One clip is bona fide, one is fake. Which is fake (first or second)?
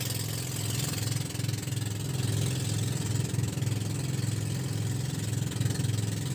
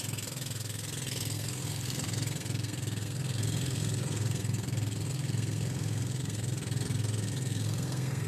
second